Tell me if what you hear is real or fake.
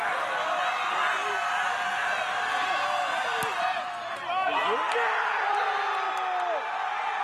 real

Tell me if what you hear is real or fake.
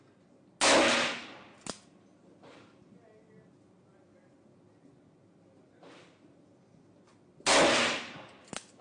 real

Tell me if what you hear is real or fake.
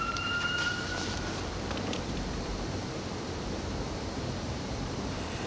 fake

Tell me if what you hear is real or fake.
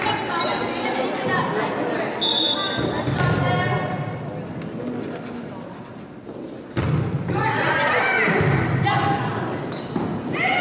real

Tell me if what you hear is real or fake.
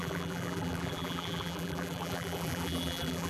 fake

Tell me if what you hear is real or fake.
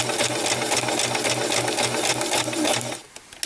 real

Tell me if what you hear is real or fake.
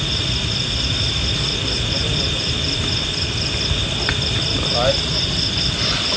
real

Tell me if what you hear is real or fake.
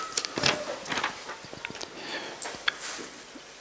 real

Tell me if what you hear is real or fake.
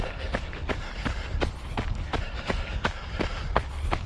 real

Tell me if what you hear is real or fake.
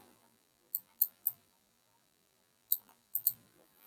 fake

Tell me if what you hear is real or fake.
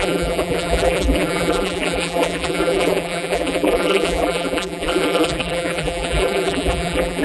fake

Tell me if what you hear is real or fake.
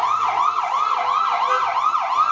real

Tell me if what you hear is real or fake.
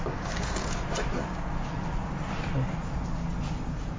real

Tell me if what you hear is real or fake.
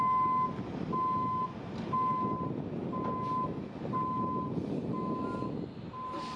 real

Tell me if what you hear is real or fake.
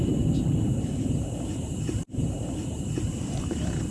fake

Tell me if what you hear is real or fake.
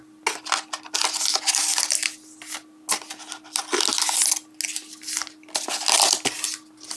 real